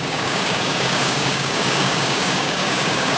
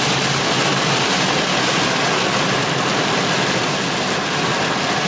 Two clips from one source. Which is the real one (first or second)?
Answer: second